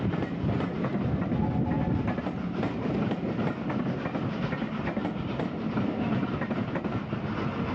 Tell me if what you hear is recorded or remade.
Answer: recorded